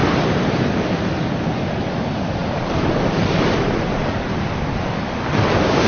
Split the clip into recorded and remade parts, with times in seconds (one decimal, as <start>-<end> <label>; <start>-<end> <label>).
0.0-0.5 remade; 0.5-2.4 recorded; 2.4-4.9 remade; 4.9-5.9 recorded